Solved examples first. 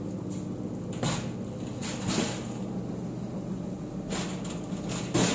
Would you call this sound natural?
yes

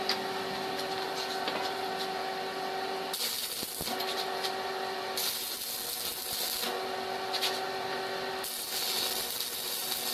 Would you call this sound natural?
yes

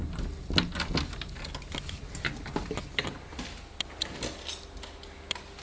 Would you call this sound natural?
yes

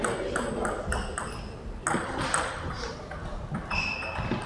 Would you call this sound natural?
yes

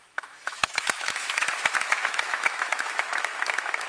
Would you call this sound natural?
no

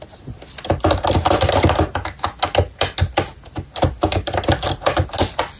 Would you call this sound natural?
yes